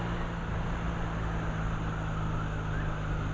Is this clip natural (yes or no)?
yes